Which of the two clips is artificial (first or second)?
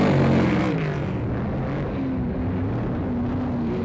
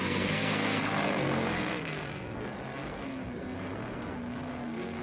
second